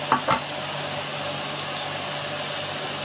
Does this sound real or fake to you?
real